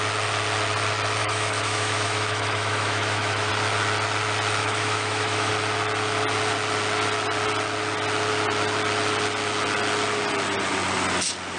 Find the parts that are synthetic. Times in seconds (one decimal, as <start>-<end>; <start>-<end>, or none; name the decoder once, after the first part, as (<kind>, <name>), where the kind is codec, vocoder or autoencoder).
1.2-3.5 (autoencoder, DAC-VAE); 4.6-5.5